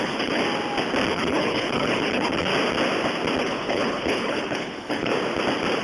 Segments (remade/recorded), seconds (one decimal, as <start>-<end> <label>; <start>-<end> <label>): 0.0-0.4 remade; 0.4-1.1 recorded; 1.1-2.5 remade; 2.5-3.4 recorded; 3.4-5.1 remade; 5.1-5.8 recorded

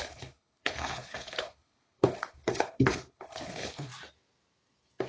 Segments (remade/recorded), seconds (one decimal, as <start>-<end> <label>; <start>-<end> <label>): 0.0-3.9 remade; 3.9-5.1 recorded

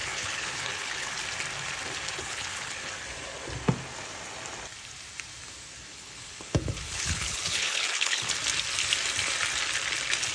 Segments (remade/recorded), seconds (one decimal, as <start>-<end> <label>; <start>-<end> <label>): 0.0-1.2 remade; 1.2-2.2 recorded; 2.2-2.9 remade; 2.9-5.9 recorded; 5.9-8.3 remade; 8.3-10.3 recorded

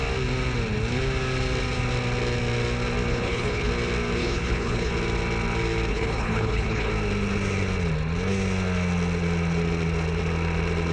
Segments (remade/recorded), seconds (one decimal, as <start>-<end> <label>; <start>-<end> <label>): 0.0-3.1 recorded; 3.1-3.7 remade; 3.7-4.2 recorded; 4.2-4.9 remade; 4.9-5.9 recorded; 5.9-6.9 remade; 6.9-10.9 recorded

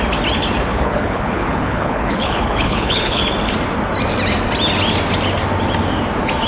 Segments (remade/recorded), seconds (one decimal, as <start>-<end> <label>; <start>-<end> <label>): 0.0-0.7 recorded; 0.7-3.2 remade; 3.2-6.5 recorded

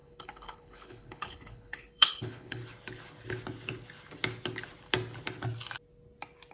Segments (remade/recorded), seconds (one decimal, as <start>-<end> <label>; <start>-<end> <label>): 0.0-2.6 remade; 2.6-6.5 recorded

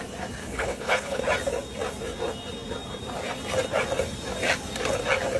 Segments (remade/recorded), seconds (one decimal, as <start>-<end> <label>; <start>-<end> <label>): 0.0-0.4 recorded; 0.4-1.2 remade; 1.2-5.4 recorded